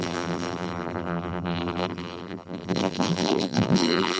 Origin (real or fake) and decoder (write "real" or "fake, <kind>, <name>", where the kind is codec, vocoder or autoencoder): fake, vocoder, BigVGAN v2